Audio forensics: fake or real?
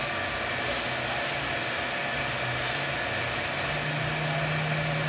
real